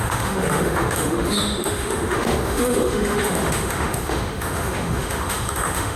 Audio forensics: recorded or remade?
remade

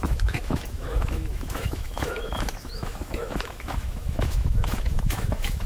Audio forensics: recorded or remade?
remade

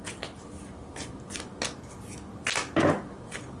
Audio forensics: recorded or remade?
recorded